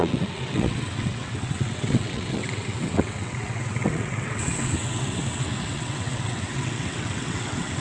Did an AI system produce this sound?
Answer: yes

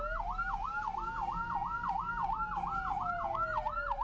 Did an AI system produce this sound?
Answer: no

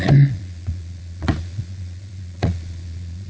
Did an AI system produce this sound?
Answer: yes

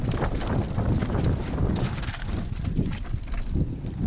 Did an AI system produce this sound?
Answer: no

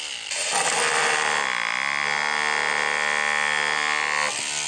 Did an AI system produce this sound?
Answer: no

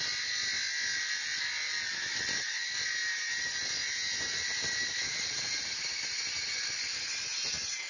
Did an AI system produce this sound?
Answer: no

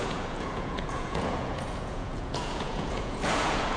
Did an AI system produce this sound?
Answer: yes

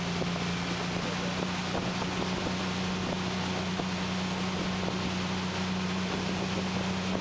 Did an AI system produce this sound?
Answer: no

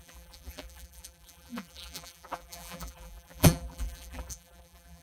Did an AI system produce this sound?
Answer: yes